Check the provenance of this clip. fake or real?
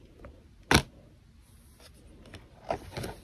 real